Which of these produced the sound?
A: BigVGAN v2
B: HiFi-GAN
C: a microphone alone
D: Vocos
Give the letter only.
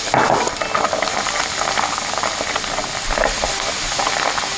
C